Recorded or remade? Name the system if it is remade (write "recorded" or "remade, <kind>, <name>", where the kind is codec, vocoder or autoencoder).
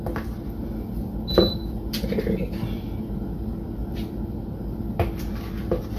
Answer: recorded